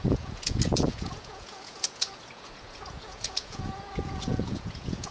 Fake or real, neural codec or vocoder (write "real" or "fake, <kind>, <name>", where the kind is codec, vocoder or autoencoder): fake, vocoder, Vocos